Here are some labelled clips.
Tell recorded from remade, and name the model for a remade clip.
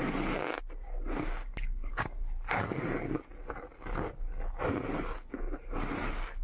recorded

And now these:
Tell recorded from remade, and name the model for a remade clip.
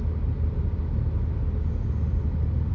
recorded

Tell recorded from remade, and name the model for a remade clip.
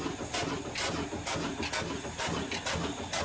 recorded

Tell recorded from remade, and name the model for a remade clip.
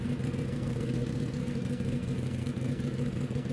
remade, codec, SNAC